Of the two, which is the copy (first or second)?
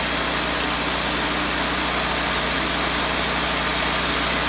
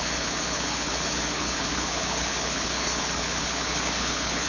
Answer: second